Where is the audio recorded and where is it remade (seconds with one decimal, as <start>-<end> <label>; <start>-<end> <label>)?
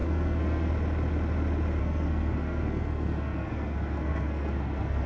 0.0-0.7 remade; 0.7-1.8 recorded; 1.8-5.1 remade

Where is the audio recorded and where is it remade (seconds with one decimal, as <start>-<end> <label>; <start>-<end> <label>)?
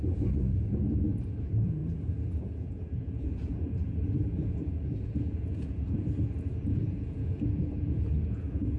0.0-6.0 remade; 6.0-6.6 recorded; 6.6-8.8 remade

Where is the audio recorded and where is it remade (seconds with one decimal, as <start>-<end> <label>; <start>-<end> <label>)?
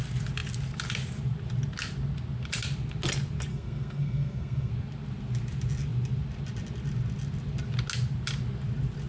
0.0-3.5 recorded; 3.5-4.7 remade; 4.7-9.1 recorded